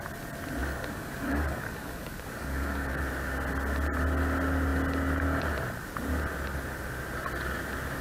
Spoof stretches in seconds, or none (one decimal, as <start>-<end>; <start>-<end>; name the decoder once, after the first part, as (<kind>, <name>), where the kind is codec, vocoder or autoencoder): 0.6-3.0 (codec, DAC)